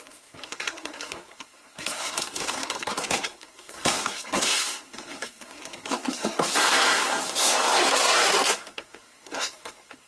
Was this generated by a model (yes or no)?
yes